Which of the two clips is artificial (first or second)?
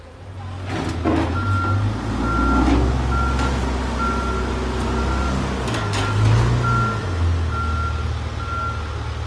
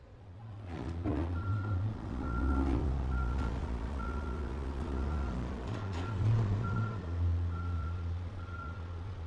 second